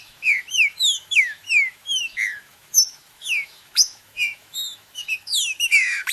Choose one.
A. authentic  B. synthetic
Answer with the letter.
B